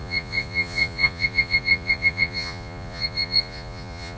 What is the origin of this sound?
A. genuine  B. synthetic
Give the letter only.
B